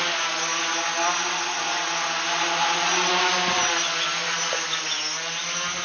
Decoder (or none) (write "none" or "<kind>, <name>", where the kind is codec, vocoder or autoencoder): none